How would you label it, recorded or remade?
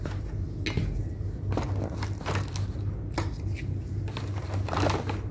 recorded